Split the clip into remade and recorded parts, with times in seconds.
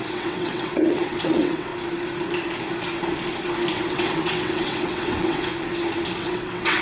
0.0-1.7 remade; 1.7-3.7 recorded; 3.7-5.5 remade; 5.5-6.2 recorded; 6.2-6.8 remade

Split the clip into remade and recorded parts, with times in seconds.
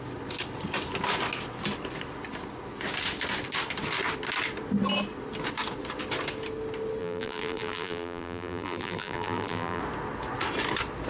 0.0-7.0 recorded; 7.0-9.8 remade; 9.8-11.1 recorded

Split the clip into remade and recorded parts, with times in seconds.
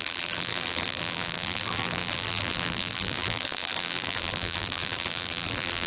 0.0-5.9 remade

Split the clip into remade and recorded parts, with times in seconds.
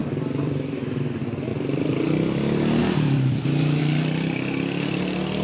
0.0-1.0 remade; 1.0-1.5 recorded; 1.5-2.0 remade; 2.0-2.8 recorded; 2.8-3.8 remade; 3.8-5.4 recorded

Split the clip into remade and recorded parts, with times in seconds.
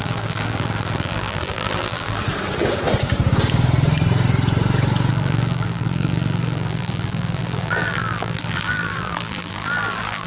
0.0-2.2 remade; 2.2-5.1 recorded; 5.1-10.3 remade